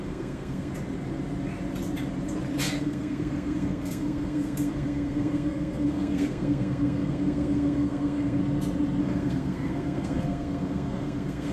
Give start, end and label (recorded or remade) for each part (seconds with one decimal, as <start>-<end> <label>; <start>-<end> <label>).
0.0-0.7 remade; 0.7-2.8 recorded; 2.8-8.4 remade; 8.4-9.0 recorded; 9.0-11.5 remade